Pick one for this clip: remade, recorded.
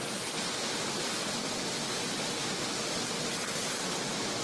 recorded